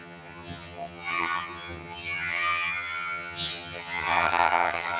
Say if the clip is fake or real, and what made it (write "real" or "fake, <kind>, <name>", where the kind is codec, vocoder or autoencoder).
fake, vocoder, HiFi-GAN